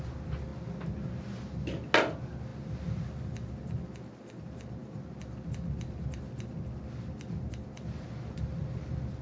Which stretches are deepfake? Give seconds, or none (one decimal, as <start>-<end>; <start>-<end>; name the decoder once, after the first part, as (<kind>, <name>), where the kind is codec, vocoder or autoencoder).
none